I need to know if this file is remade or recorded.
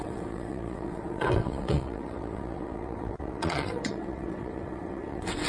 remade